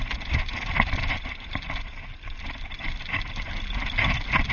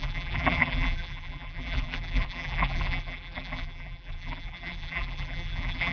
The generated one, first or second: second